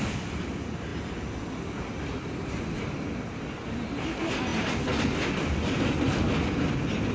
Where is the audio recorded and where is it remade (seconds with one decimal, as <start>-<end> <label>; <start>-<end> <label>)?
0.0-7.1 recorded

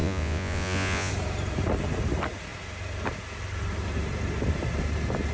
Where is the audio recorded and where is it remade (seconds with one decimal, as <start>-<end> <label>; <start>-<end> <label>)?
0.0-1.1 remade; 1.1-5.3 recorded

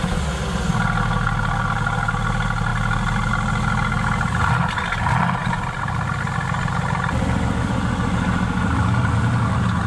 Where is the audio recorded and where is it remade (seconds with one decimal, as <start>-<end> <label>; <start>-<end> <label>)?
0.0-9.9 recorded

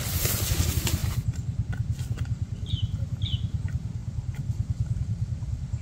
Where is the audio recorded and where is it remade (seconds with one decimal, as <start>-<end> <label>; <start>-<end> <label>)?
0.0-4.0 recorded; 4.0-5.8 remade